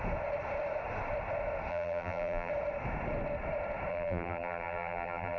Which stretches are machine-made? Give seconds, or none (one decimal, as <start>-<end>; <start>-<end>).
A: 1.7-2.5; 3.9-5.4